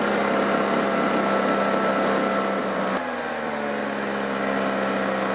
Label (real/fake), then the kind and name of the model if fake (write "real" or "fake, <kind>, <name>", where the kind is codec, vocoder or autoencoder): real